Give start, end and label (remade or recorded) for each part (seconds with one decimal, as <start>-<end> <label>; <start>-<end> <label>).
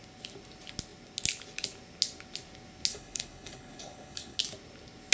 0.0-2.9 recorded; 2.9-4.4 remade; 4.4-5.1 recorded